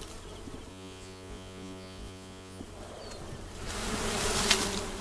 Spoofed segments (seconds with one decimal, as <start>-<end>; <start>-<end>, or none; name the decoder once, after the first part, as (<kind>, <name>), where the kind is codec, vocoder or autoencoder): 0.7-2.6 (vocoder, Vocos)